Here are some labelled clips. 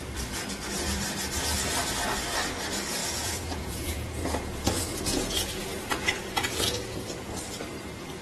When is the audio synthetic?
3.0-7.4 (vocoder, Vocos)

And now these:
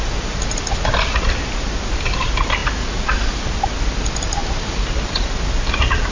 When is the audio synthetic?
none